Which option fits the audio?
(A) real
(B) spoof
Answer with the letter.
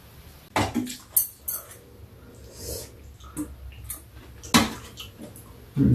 A